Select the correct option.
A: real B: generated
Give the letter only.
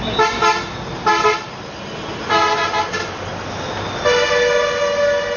A